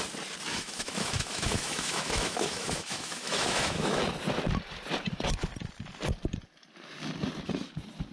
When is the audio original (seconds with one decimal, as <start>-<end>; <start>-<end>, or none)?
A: 0.0-0.5; 4.0-8.1